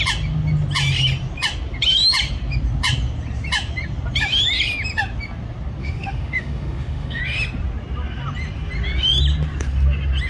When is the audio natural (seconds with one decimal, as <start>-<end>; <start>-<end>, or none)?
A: 0.0-5.8; 7.2-10.3